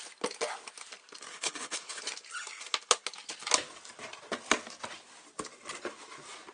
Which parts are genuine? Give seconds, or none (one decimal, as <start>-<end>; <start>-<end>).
0.0-1.3; 2.0-6.5